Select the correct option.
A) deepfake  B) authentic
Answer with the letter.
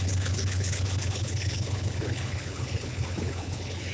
A